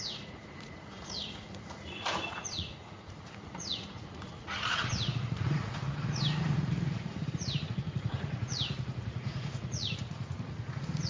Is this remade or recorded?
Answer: remade